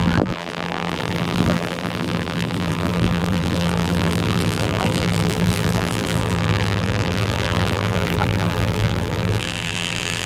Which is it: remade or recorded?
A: remade